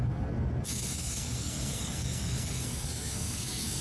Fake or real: fake